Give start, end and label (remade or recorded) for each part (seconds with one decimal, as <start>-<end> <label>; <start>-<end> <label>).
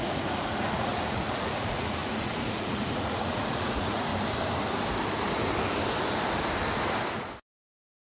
0.0-4.1 remade; 4.1-8.0 recorded